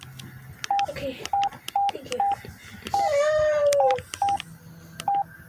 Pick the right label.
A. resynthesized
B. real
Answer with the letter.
B